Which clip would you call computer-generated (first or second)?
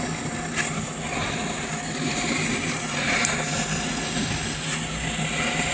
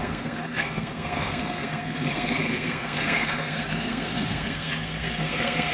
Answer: second